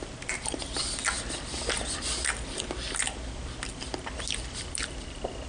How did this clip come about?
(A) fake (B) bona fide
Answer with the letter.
B